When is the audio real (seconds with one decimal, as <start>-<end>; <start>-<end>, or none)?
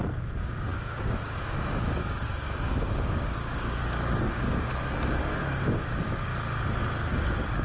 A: 4.7-5.6; 6.3-7.1